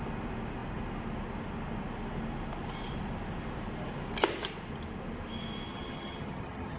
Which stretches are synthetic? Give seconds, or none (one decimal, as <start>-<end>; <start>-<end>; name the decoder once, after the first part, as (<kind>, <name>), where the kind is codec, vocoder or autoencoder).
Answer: 5.7-6.8 (vocoder, HiFi-GAN)